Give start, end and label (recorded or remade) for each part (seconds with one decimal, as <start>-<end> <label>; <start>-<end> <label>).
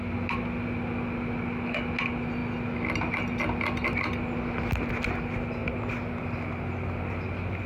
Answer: 0.0-7.7 recorded